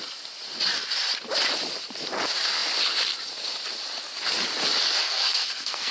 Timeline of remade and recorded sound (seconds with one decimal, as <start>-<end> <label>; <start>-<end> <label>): 0.0-5.0 recorded; 5.0-5.9 remade